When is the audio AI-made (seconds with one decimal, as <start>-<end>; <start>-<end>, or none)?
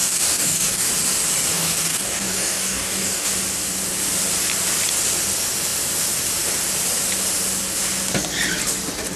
0.0-0.9; 1.5-3.3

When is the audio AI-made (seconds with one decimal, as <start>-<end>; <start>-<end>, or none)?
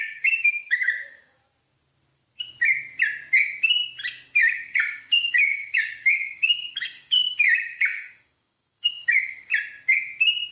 0.0-1.4; 4.4-9.5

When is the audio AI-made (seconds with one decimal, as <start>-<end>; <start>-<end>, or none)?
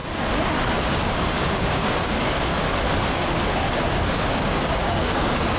0.8-2.5; 3.4-5.6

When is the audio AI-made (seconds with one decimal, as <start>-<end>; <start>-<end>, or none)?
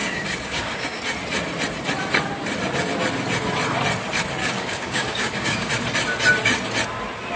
0.0-1.0; 4.4-5.7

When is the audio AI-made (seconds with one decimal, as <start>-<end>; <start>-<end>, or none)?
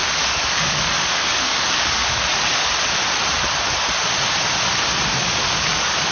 0.0-2.7; 5.2-6.1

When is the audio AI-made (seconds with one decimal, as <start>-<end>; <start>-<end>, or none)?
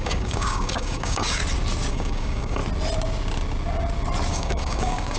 0.0-1.4; 1.9-2.6; 4.3-5.2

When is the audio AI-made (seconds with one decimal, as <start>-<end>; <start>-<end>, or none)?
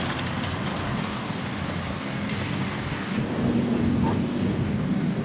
0.8-1.4; 1.9-5.2